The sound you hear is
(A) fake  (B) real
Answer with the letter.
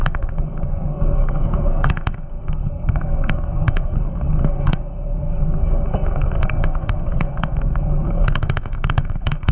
A